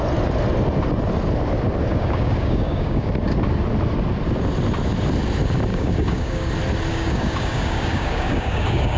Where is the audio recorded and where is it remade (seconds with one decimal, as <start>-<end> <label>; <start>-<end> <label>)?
0.0-1.9 recorded; 1.9-3.1 remade; 3.1-5.7 recorded; 5.7-6.5 remade; 6.5-6.9 recorded; 6.9-9.0 remade